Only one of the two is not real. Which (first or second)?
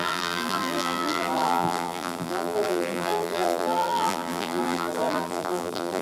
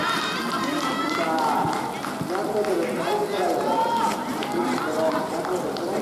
first